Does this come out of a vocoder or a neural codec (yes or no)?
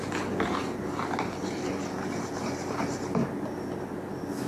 no